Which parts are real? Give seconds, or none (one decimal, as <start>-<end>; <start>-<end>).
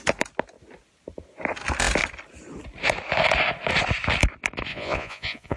0.0-4.7